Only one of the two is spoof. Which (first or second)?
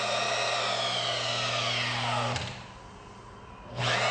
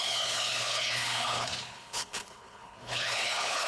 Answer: second